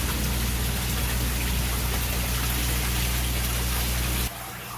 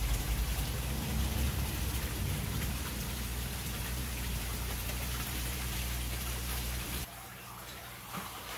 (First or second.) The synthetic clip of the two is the second